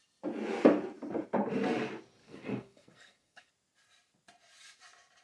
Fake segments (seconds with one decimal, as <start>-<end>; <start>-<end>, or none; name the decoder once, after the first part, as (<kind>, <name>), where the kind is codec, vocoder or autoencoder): 2.2-3.5 (codec, SNAC)